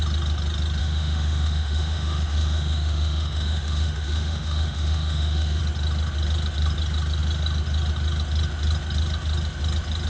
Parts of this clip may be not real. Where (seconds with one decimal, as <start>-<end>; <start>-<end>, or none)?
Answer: 0.8-5.6

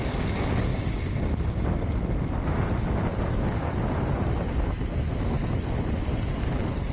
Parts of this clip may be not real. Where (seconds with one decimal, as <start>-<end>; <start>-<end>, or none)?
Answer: 0.7-1.2; 3.1-4.7

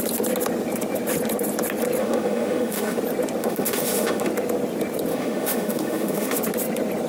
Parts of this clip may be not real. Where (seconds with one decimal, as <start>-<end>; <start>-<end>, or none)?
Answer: 2.0-3.0; 3.4-4.3; 5.1-6.4

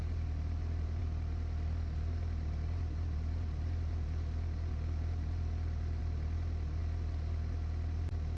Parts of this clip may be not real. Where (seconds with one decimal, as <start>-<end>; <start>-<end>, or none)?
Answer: 0.0-6.8

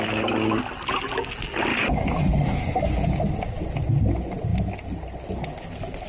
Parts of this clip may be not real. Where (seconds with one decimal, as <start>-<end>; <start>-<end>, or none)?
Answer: 1.7-3.1

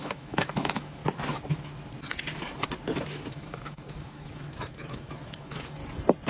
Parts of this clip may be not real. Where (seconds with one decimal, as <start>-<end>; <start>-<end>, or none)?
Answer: 0.0-1.0; 3.3-5.8

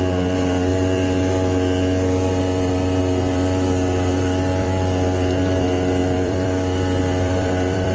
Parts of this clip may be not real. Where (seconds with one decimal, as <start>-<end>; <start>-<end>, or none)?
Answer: 0.0-7.9